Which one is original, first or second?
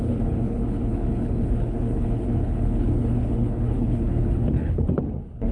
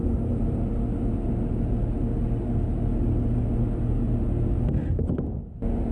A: second